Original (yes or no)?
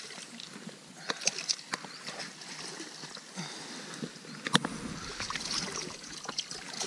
yes